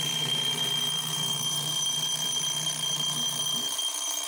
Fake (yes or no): yes